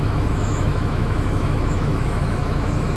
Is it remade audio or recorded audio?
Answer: remade